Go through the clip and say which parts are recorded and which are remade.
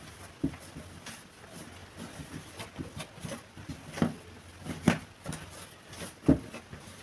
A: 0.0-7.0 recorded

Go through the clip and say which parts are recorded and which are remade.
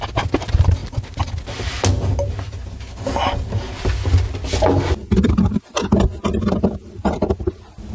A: 0.0-7.9 recorded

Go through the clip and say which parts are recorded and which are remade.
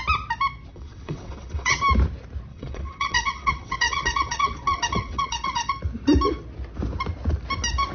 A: 0.0-0.7 recorded; 0.7-1.8 remade; 1.8-2.5 recorded; 2.5-5.7 remade; 5.7-7.9 recorded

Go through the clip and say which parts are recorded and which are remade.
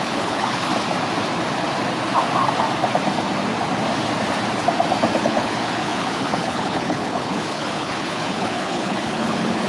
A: 0.0-0.7 remade; 0.7-5.2 recorded; 5.2-9.7 remade